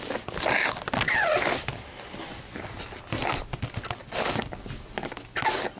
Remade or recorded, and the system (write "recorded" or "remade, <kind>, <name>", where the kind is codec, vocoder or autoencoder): recorded